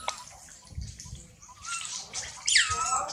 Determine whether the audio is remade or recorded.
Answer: recorded